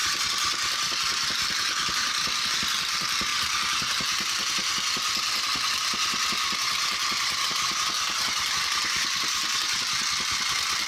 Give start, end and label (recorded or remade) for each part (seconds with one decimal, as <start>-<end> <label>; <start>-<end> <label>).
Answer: 0.0-10.9 recorded